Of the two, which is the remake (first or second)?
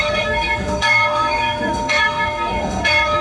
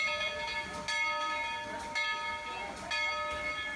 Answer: first